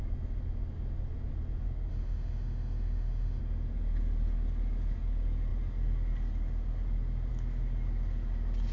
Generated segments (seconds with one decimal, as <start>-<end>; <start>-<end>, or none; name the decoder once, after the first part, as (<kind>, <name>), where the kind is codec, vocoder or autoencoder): 1.9-3.4 (autoencoder, DAC-VAE)